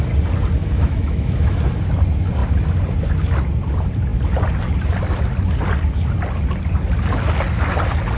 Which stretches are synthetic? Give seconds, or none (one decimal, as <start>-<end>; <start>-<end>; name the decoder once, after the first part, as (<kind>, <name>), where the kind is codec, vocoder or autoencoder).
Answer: 0.6-1.6 (autoencoder, DAC-VAE)